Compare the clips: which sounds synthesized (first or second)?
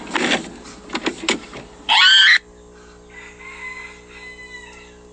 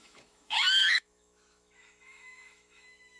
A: second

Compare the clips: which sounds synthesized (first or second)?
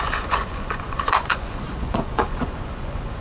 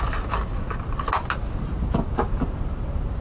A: first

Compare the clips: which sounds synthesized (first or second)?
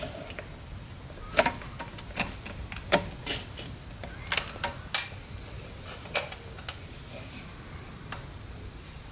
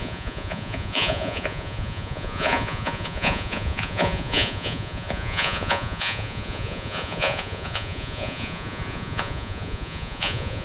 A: second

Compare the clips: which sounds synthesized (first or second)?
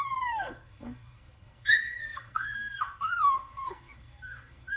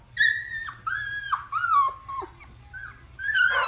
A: first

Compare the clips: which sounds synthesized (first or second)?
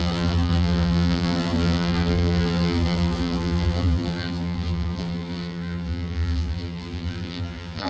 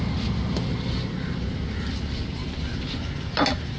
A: first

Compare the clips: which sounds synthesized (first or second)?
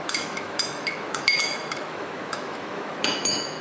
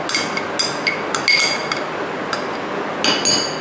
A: first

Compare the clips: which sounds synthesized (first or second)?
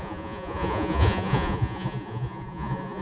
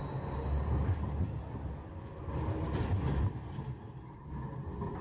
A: first